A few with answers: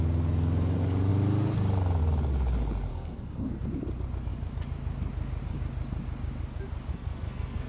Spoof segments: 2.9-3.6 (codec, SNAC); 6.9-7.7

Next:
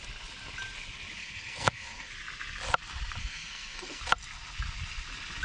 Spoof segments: 1.2-2.1 (codec, SNAC); 3.2-4.0

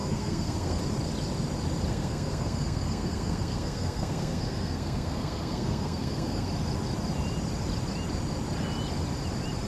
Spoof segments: 0.0-0.8 (codec, SNAC); 1.9-6.5

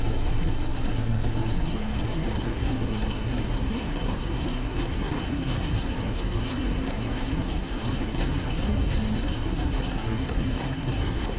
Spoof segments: 0.0-11.4 (codec, SNAC)

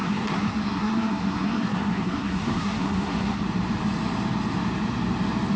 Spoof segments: 0.0-3.4 (codec, SNAC)

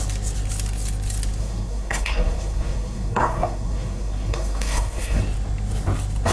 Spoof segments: 1.4-5.2 (codec, SNAC)